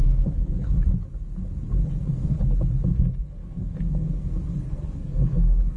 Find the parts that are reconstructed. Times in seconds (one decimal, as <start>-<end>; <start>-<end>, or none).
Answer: 0.0-0.7; 1.9-2.4; 2.9-5.8